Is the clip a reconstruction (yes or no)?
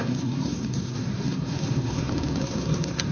yes